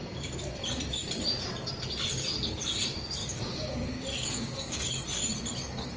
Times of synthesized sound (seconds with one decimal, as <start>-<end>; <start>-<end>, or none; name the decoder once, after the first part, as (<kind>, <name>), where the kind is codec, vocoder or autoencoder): 3.2-4.9 (codec, DAC)